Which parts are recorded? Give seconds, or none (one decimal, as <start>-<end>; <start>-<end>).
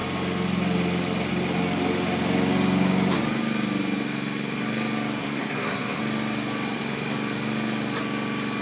0.0-5.2; 6.0-8.6